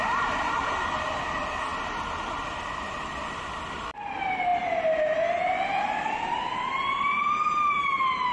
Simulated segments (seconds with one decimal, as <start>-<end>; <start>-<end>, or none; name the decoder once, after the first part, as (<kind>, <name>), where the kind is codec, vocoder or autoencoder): none